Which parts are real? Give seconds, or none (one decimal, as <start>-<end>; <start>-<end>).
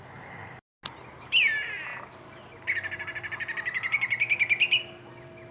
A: 0.0-5.5